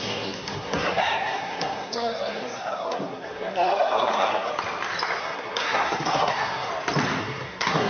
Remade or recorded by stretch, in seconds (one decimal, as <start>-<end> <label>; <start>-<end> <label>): 0.0-4.5 remade; 4.5-5.2 recorded; 5.2-6.7 remade; 6.7-7.2 recorded; 7.2-7.9 remade